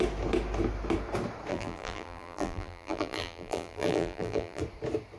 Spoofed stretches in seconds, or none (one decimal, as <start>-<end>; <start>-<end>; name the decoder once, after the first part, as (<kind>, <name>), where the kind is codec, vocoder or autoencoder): 1.5-4.6 (vocoder, BigVGAN v2)